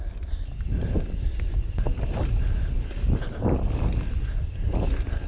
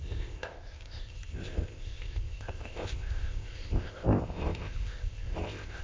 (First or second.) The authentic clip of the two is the first